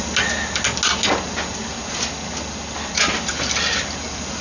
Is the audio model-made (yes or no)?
no